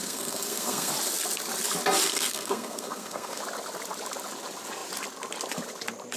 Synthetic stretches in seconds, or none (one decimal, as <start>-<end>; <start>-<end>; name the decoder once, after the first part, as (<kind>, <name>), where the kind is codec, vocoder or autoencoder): 0.0-0.9 (codec, SNAC); 2.1-3.4